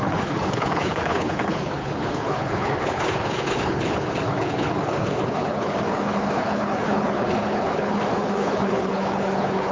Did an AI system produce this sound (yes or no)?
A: yes